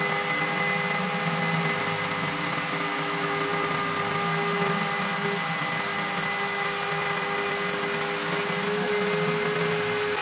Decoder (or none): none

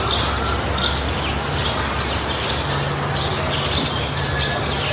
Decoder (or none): none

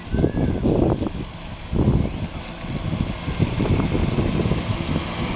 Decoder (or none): none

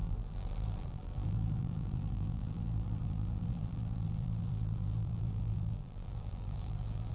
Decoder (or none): vocoder, BigVGAN v2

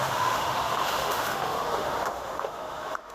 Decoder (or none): autoencoder, DAC-VAE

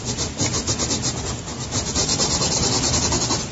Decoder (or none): none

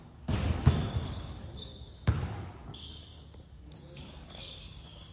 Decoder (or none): codec, DAC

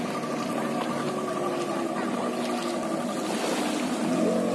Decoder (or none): none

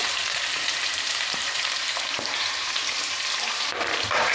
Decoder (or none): vocoder, BigVGAN v2